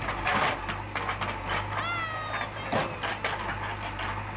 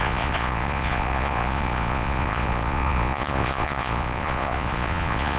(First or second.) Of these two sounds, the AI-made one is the second